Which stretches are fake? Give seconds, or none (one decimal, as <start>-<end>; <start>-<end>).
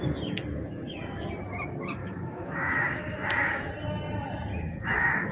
0.5-1.2; 2.0-3.7; 4.5-5.3